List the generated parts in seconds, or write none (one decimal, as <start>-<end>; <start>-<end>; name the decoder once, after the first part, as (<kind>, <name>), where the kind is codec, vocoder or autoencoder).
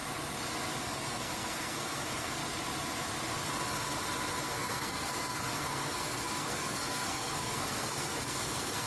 0.8-2.4 (codec, SNAC); 4.4-8.9